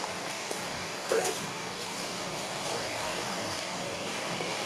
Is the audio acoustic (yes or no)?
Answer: no